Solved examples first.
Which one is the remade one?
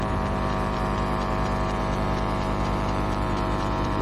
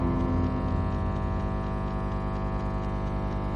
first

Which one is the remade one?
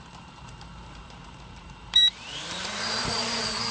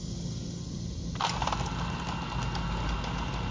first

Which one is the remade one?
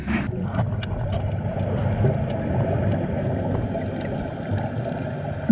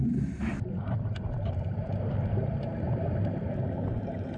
second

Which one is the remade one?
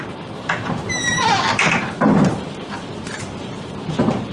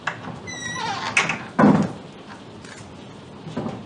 first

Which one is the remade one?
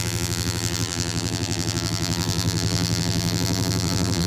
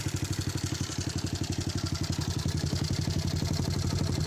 first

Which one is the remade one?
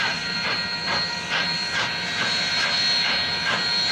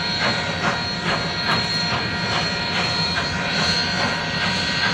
second